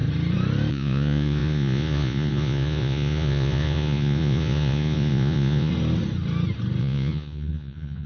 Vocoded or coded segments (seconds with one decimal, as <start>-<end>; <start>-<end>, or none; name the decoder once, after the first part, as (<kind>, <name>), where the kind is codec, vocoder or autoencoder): 0.7-5.7 (vocoder, Vocos); 6.8-8.1